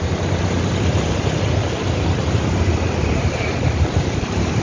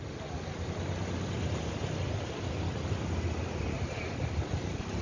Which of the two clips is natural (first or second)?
second